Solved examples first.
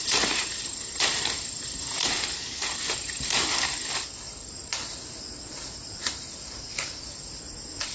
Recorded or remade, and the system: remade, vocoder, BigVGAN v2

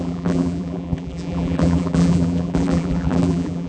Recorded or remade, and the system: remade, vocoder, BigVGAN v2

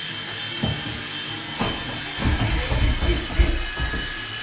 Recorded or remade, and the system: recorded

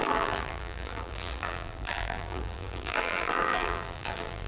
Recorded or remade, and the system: remade, vocoder, BigVGAN v2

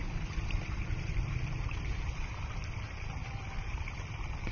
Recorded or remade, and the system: remade, vocoder, BigVGAN v2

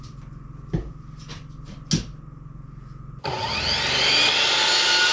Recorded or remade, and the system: recorded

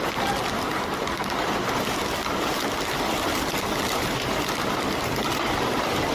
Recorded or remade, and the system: recorded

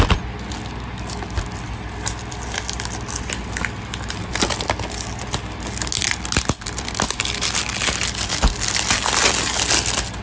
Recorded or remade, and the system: recorded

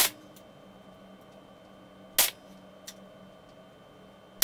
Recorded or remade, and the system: recorded